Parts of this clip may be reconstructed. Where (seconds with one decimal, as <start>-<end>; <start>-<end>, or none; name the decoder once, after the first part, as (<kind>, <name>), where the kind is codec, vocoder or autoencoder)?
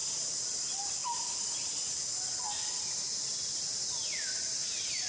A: none